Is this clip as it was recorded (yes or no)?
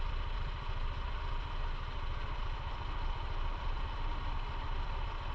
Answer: no